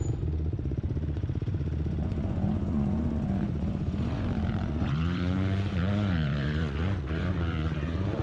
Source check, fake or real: fake